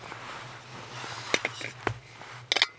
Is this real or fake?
real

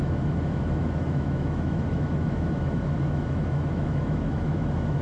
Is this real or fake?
fake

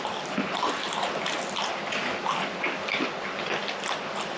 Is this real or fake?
real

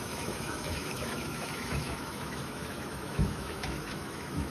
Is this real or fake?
fake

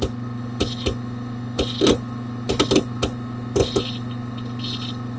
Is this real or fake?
real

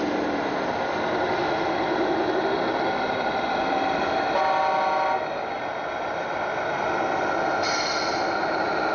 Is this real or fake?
real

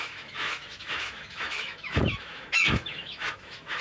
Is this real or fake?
fake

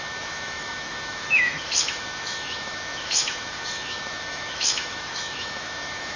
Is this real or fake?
fake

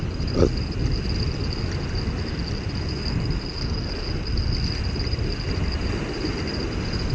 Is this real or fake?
real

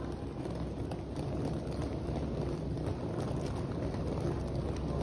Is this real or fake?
real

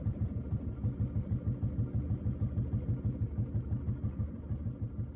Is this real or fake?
real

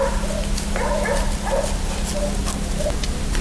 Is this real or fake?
real